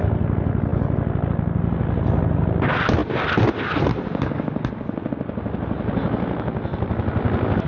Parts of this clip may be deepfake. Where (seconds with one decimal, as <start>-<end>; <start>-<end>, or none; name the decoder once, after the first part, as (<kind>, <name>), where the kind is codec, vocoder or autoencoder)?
none